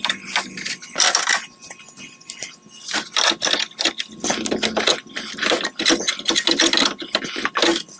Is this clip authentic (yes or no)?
yes